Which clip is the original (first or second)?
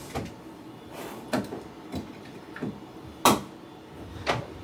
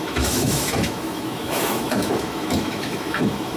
first